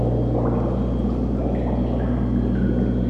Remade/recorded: recorded